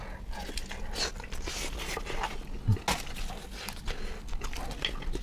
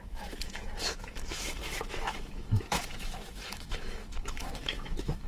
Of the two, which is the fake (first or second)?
second